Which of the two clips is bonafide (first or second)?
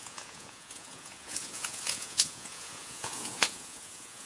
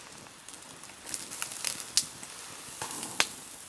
second